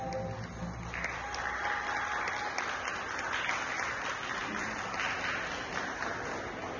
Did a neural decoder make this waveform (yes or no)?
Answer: no